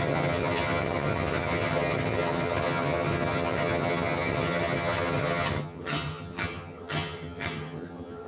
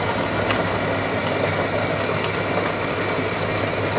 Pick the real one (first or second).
second